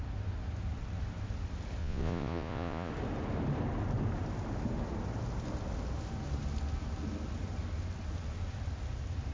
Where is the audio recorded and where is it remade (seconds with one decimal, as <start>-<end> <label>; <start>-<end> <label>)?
0.0-1.8 recorded; 1.8-2.9 remade; 2.9-9.3 recorded